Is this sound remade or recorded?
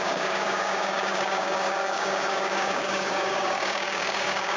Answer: remade